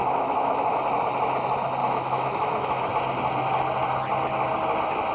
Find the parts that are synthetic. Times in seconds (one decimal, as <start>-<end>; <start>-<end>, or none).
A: 0.0-0.8; 1.8-2.9